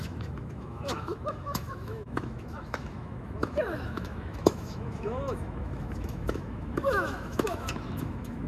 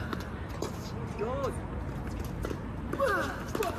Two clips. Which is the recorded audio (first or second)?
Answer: second